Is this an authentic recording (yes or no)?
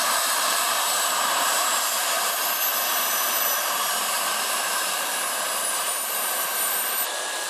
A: no